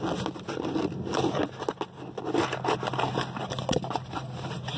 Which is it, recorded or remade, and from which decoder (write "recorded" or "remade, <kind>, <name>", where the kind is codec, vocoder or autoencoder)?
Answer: recorded